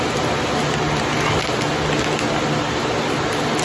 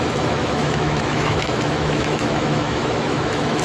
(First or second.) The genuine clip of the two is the first